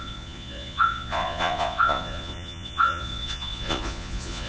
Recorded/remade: remade